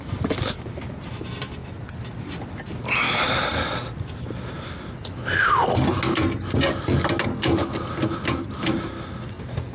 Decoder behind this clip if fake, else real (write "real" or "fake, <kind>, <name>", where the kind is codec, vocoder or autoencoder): real